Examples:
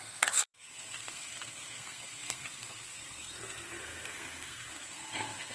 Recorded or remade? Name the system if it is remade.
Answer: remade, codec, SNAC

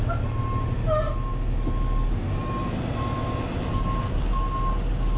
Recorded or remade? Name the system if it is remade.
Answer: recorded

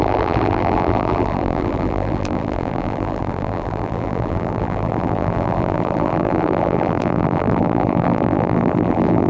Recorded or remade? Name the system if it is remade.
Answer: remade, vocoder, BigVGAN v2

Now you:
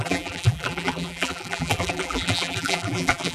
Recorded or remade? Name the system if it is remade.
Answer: remade, vocoder, BigVGAN v2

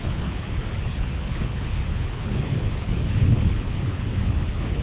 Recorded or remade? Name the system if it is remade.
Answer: remade, codec, HILCodec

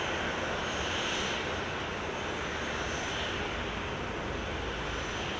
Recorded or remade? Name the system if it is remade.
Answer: recorded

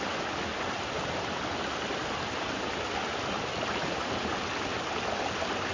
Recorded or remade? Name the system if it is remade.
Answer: recorded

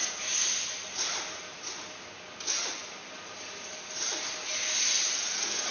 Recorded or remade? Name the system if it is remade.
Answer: recorded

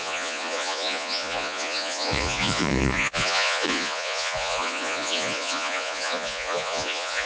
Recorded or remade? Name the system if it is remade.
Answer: remade, vocoder, Vocos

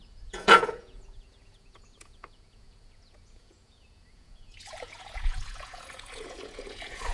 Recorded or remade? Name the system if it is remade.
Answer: remade, vocoder, Vocos